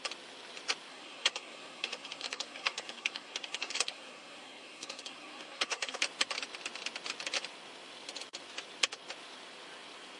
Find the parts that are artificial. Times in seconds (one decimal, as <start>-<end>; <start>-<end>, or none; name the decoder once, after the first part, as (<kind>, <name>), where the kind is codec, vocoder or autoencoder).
0.9-6.0 (codec, SNAC)